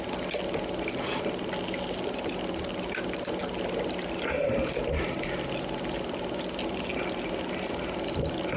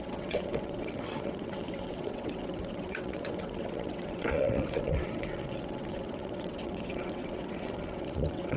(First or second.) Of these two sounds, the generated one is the second